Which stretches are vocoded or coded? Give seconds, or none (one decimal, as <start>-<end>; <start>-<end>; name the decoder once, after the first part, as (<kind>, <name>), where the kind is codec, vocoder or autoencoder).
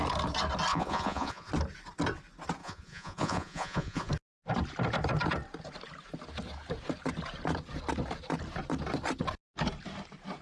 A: 0.7-1.5 (vocoder, Vocos); 2.6-4.1